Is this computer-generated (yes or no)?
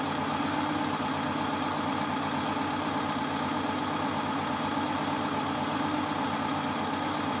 no